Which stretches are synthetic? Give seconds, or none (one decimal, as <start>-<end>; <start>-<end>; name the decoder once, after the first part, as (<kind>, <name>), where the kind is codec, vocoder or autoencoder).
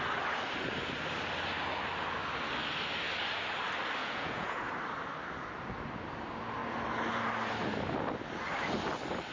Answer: 4.0-4.7 (vocoder, Vocos)